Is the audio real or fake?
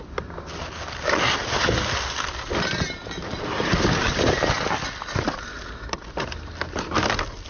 real